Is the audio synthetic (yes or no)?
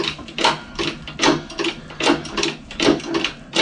no